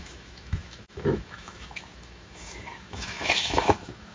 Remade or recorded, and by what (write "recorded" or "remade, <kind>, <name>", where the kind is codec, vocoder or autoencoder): remade, autoencoder, DAC-VAE